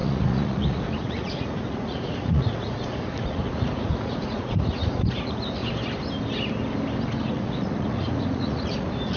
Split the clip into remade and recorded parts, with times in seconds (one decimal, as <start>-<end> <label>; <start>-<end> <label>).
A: 0.0-5.6 remade; 5.6-7.3 recorded; 7.3-9.2 remade